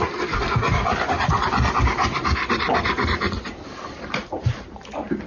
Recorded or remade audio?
remade